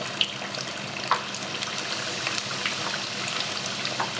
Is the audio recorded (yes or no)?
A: yes